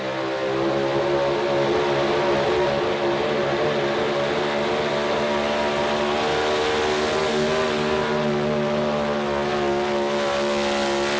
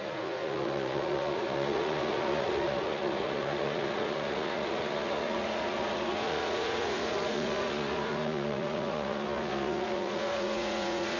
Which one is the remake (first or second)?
second